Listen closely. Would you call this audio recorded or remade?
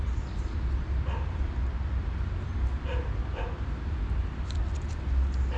recorded